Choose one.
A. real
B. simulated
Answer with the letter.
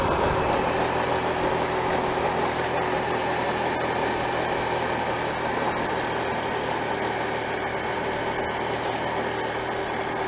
A